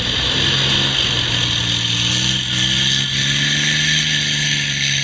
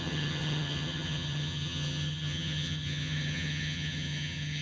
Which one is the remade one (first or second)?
second